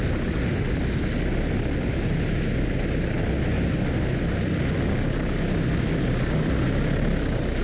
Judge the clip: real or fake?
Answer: real